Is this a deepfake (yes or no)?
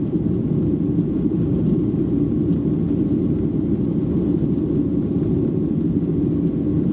no